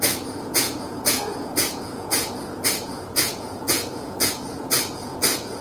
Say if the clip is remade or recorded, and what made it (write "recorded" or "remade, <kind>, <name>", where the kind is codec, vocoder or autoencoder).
remade, vocoder, Vocos